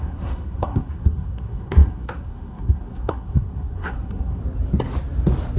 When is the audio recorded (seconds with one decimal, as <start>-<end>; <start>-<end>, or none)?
4.4-5.6